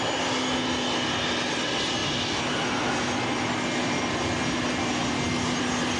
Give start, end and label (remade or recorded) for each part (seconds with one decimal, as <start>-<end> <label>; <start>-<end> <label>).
0.0-6.0 recorded